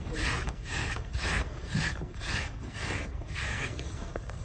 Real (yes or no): no